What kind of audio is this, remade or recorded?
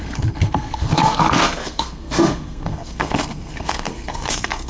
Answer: remade